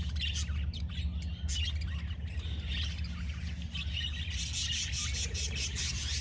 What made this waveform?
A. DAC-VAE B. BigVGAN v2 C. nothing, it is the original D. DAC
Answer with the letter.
C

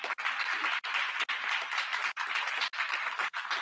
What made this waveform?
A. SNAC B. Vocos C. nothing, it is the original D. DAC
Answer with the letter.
C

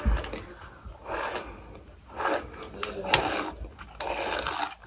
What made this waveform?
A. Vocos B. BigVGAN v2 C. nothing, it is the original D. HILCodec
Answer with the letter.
C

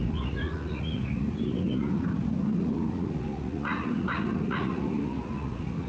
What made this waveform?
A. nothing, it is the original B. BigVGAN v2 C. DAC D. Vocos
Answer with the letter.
D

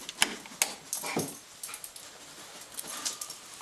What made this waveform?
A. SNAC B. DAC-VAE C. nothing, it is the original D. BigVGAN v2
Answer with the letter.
C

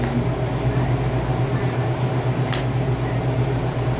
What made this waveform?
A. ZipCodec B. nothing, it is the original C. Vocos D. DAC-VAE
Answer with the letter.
B